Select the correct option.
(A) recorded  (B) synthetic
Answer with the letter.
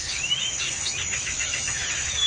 B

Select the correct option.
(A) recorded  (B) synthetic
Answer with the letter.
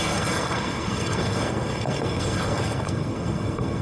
B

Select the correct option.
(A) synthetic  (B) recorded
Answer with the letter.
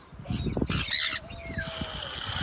B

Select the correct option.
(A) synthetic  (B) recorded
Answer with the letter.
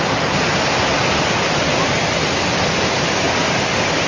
B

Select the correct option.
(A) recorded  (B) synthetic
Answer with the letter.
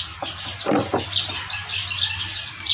A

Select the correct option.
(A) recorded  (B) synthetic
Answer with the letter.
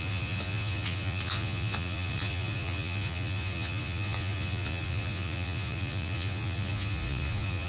B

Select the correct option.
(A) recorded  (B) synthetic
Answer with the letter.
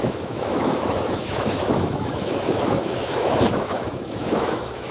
B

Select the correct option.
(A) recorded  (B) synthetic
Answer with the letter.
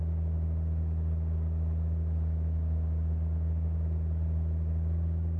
A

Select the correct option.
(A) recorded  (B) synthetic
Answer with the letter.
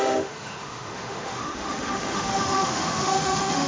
B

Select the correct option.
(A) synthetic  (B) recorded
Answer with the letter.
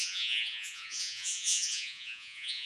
A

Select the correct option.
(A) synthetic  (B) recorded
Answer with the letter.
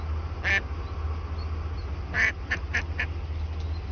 B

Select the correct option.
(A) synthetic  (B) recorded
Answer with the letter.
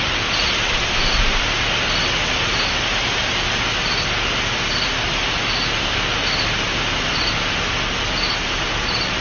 B